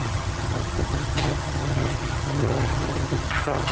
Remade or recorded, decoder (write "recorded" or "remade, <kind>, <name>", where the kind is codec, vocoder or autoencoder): remade, vocoder, HiFi-GAN